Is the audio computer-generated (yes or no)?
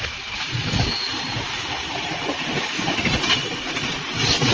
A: yes